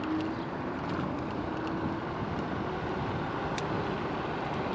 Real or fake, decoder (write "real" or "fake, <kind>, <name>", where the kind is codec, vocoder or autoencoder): real